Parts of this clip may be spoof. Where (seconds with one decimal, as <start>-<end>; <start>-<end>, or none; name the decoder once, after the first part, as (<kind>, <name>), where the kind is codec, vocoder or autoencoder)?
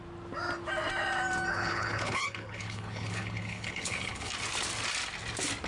1.5-4.3 (codec, HILCodec)